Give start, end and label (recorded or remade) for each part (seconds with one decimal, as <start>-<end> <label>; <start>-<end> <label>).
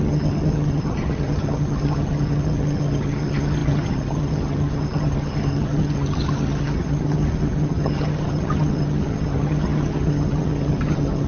0.0-11.3 remade